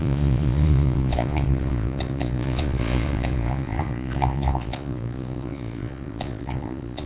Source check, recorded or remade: remade